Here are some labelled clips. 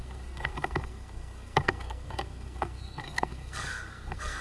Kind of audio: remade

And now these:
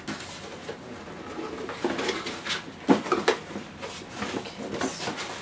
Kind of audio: recorded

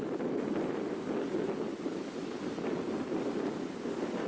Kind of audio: recorded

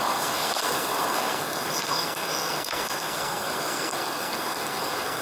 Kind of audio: remade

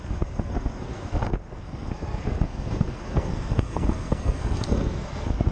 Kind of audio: remade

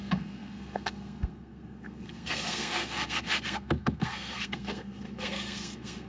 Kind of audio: remade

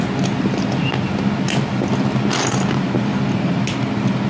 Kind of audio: recorded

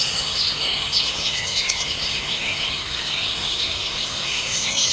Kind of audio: remade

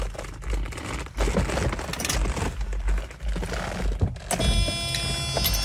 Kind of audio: recorded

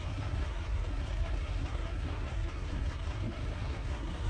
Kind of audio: remade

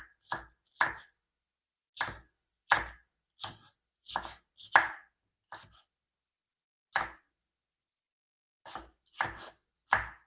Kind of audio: recorded